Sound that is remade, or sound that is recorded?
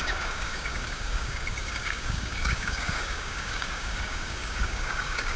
remade